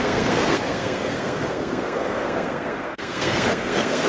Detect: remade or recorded remade